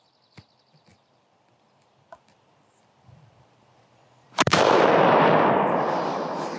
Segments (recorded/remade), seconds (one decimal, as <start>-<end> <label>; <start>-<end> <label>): 0.0-0.9 recorded; 0.9-4.9 remade; 4.9-6.6 recorded